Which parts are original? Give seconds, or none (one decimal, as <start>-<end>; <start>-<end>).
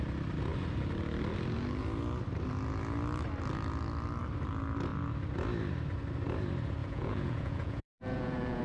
0.0-6.8